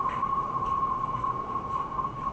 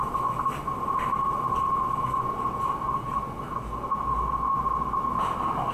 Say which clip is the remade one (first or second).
first